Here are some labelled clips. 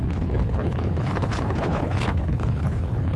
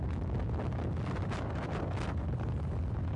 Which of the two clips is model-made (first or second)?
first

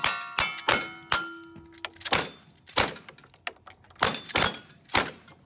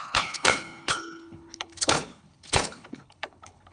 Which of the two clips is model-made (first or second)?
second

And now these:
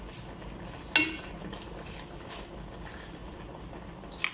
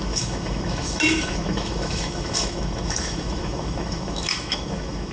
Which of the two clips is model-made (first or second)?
second